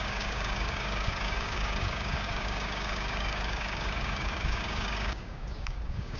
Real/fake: fake